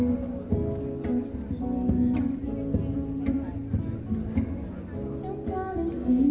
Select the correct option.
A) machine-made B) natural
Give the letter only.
B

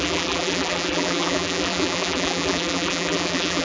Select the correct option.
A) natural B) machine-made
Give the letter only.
B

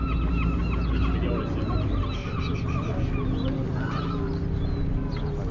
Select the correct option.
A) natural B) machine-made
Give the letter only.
A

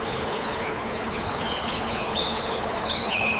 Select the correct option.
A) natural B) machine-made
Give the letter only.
B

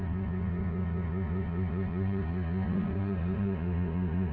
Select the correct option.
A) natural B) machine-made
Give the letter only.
B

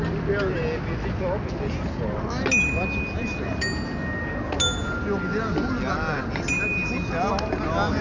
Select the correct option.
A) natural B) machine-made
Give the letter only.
A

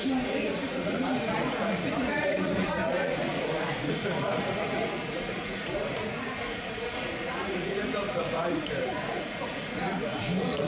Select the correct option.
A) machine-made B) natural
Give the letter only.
A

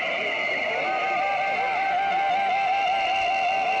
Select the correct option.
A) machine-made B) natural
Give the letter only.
B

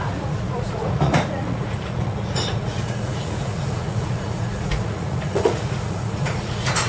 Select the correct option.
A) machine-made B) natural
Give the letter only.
A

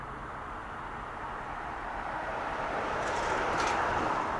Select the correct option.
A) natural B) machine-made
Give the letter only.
B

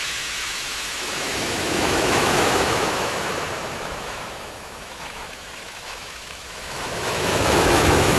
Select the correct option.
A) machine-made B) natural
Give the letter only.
A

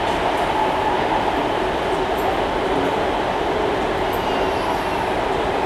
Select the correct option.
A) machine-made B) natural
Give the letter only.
B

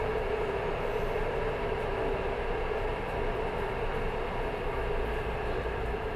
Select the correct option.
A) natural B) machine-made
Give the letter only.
A